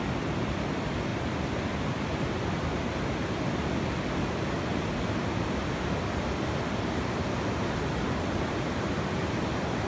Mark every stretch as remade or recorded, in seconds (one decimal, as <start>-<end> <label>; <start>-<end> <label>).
0.0-9.9 recorded